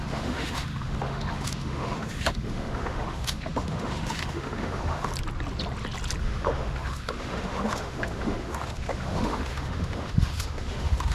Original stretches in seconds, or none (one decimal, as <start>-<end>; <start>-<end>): 5.1-6.2